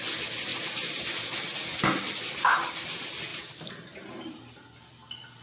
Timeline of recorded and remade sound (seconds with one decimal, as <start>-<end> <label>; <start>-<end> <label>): 0.0-0.5 recorded; 0.5-1.2 remade; 1.2-3.3 recorded; 3.3-4.4 remade; 4.4-5.4 recorded